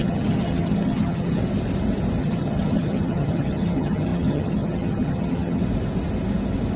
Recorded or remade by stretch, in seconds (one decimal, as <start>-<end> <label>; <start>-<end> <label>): 0.0-1.4 remade; 1.4-2.2 recorded; 2.2-5.6 remade; 5.6-6.8 recorded